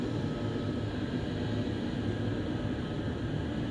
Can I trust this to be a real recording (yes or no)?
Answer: yes